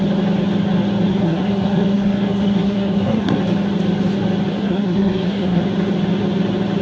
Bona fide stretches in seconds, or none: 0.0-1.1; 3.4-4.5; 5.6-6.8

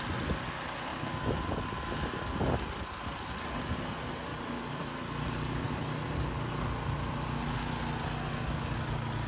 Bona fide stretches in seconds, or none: 0.0-9.3

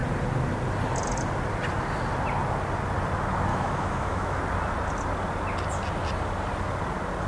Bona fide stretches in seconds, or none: 0.0-3.5; 4.4-7.3